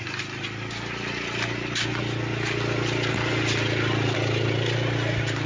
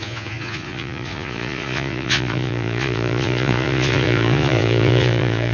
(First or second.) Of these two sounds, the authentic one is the first